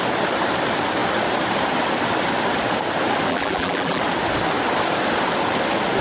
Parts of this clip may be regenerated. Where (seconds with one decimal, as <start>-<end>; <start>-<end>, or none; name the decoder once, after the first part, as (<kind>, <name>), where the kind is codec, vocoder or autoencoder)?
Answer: 3.3-4.0 (vocoder, BigVGAN v2)